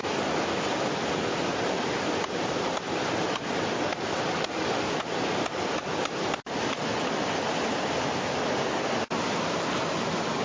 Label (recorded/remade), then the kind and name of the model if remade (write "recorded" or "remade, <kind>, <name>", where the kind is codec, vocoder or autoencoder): recorded